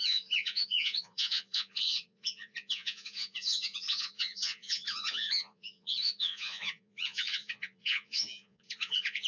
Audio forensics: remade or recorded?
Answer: remade